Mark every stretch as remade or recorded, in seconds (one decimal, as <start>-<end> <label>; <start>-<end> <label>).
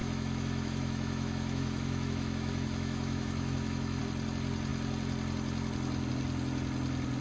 0.0-4.0 remade; 4.0-7.2 recorded